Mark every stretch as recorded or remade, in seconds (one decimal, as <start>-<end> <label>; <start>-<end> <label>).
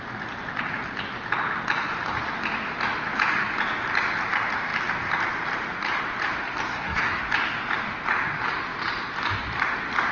0.0-6.7 recorded; 6.7-7.2 remade; 7.2-10.1 recorded